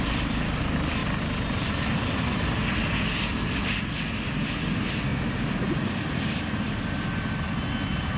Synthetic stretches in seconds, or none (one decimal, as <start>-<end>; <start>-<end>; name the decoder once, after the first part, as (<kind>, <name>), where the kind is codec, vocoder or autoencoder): 1.0-2.2 (vocoder, BigVGAN v2); 3.3-4.0